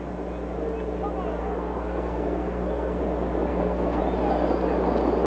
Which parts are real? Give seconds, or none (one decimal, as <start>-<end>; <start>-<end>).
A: 0.0-1.4; 3.0-3.5; 4.0-5.3